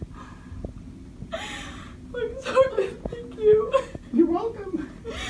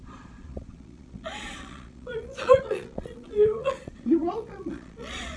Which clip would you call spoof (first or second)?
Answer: second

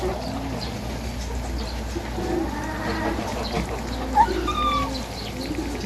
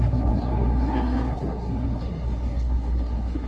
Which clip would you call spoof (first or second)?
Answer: second